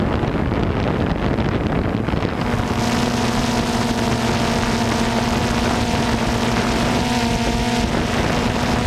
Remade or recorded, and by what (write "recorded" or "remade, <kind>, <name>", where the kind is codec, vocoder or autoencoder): recorded